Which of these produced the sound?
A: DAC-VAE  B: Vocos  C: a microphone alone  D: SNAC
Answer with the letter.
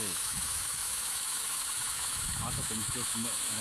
A